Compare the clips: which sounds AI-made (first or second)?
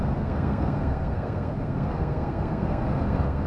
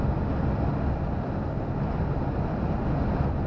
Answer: first